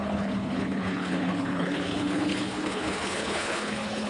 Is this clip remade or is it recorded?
remade